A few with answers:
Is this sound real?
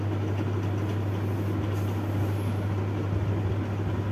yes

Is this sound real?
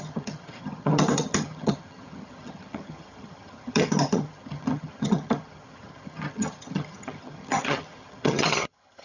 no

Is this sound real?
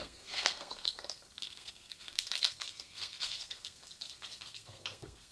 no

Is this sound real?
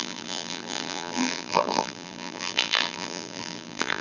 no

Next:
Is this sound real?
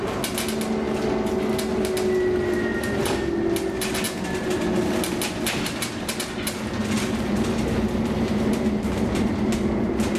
yes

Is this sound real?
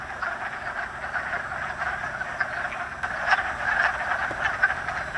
yes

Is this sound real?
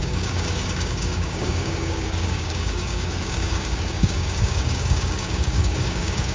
no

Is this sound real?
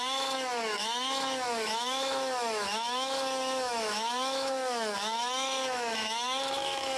no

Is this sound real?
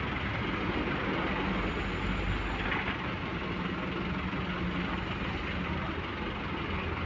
yes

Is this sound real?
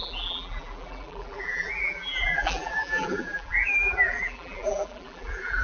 no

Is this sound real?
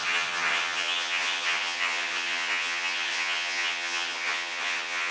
no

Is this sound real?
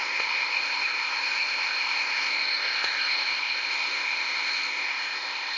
no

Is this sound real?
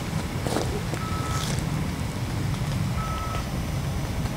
yes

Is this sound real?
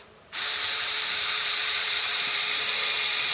no